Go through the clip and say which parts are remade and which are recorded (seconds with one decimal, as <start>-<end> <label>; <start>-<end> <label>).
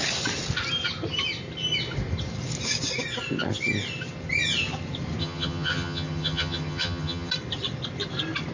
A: 0.0-5.2 recorded; 5.2-7.3 remade; 7.3-8.5 recorded